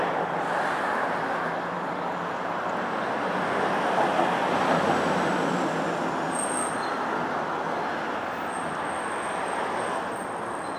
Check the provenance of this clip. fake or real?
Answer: real